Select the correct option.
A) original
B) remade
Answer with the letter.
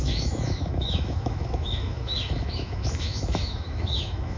B